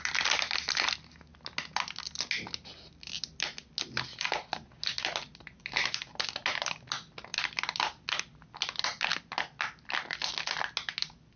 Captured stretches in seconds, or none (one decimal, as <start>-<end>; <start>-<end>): 0.0-11.4